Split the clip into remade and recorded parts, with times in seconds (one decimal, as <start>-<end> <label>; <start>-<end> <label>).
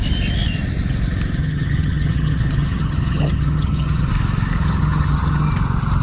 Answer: 0.0-1.4 recorded; 1.4-4.1 remade; 4.1-4.6 recorded; 4.6-5.5 remade; 5.5-6.0 recorded